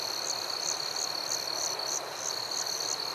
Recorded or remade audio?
recorded